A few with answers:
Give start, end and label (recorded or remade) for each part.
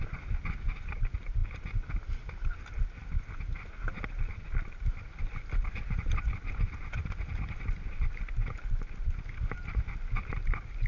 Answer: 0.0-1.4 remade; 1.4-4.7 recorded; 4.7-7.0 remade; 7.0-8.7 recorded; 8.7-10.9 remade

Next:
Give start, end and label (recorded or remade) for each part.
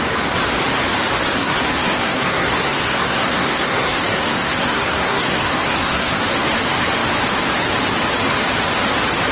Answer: 0.0-1.4 recorded; 1.4-6.2 remade; 6.2-9.3 recorded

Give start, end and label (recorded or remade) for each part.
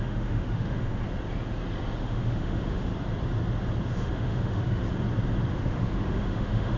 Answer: 0.0-1.0 remade; 1.0-2.0 recorded; 2.0-2.9 remade; 2.9-3.9 recorded; 3.9-4.8 remade; 4.8-5.5 recorded; 5.5-6.8 remade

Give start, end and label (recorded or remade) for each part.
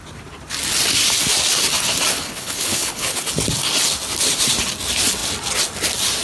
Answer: 0.0-2.1 recorded; 2.1-3.3 remade; 3.3-6.2 recorded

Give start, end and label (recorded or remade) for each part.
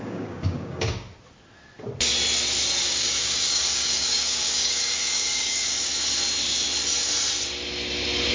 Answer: 0.0-1.1 remade; 1.1-2.8 recorded; 2.8-5.9 remade; 5.9-8.3 recorded